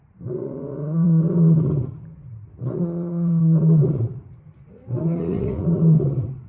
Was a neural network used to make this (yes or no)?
yes